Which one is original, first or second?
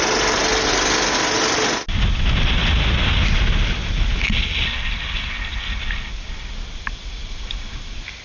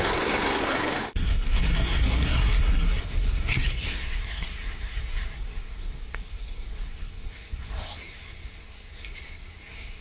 first